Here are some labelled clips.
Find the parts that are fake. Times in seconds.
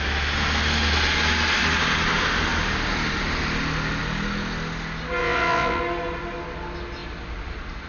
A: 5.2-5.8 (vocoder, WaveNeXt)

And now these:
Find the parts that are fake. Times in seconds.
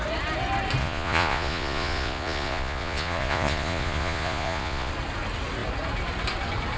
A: 0.8-4.9 (vocoder, Vocos)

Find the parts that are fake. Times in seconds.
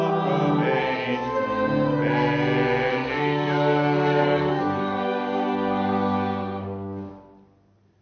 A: 2.9-7.1 (codec, DAC)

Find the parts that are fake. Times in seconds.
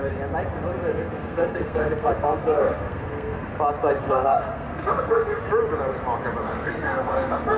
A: 0.9-3.5 (codec, SNAC); 4.0-5.4; 6.4-7.6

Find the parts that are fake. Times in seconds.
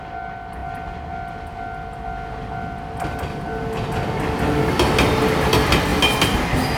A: none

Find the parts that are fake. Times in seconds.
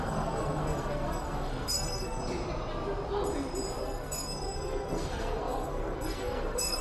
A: 0.0-2.2 (codec, SNAC); 3.8-6.8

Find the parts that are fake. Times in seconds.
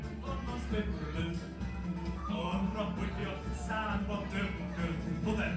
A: 1.2-2.6 (codec, SNAC)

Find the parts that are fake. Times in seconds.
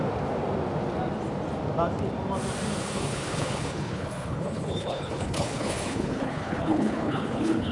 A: 2.8-7.7 (codec, HILCodec)